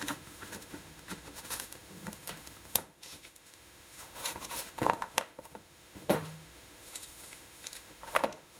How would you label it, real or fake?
fake